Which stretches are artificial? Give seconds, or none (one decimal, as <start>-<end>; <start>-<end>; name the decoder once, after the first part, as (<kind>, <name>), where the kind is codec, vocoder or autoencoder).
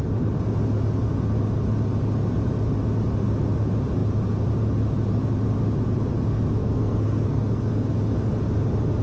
6.6-7.7 (codec, SNAC)